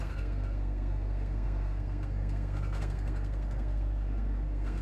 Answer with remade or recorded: remade